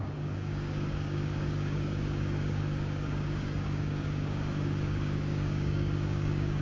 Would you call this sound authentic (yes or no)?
no